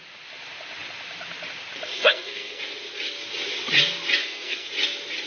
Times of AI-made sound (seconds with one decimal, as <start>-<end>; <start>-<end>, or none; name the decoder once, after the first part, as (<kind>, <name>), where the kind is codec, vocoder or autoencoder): 1.9-2.6 (codec, SNAC); 4.2-4.7